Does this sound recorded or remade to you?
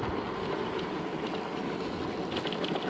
recorded